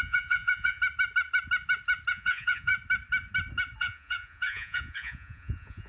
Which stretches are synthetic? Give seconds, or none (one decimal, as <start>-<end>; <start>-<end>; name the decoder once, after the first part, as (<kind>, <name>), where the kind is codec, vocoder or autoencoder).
0.0-0.8 (vocoder, Vocos); 2.1-2.7; 3.8-5.9